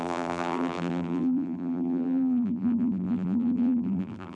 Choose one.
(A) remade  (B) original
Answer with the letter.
A